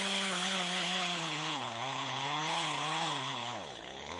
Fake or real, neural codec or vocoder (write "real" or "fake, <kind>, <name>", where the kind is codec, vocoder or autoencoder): fake, codec, HILCodec